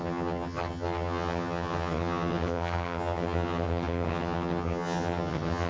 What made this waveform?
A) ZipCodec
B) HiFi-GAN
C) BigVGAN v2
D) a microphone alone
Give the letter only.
B